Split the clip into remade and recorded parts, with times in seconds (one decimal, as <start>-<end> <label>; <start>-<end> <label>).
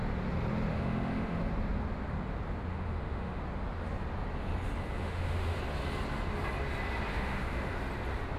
0.0-0.7 recorded; 0.7-1.5 remade; 1.5-2.7 recorded; 2.7-3.4 remade; 3.4-5.0 recorded; 5.0-5.6 remade; 5.6-7.1 recorded; 7.1-7.7 remade; 7.7-8.4 recorded